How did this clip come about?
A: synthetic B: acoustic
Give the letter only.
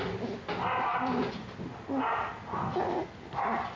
B